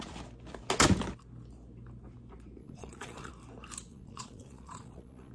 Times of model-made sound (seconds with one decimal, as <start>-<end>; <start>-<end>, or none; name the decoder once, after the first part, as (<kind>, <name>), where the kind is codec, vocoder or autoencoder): 2.6-3.3 (vocoder, Vocos); 3.9-5.3